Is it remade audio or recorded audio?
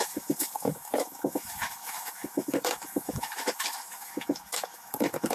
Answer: remade